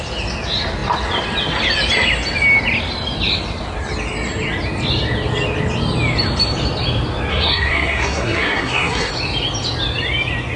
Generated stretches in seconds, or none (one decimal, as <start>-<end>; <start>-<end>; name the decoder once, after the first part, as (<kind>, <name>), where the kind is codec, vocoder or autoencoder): 7.3-9.1 (codec, SNAC)

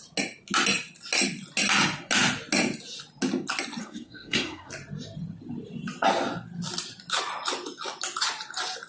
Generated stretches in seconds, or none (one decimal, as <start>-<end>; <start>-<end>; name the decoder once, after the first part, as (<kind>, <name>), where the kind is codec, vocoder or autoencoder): 3.8-4.7 (codec, SNAC)

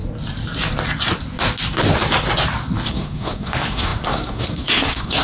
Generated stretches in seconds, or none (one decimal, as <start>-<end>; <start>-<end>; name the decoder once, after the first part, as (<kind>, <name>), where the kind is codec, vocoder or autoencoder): 2.9-5.2 (codec, SNAC)

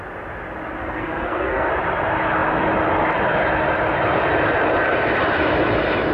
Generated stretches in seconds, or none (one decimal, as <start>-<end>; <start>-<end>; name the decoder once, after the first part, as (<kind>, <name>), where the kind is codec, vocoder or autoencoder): 0.8-1.7 (codec, SNAC)